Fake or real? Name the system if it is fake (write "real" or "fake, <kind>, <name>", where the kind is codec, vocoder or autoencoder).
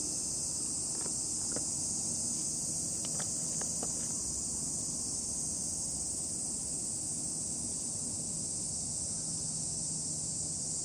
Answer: real